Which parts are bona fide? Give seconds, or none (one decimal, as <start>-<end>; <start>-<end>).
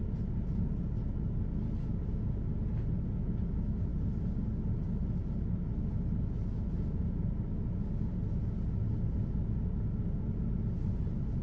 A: 0.0-11.4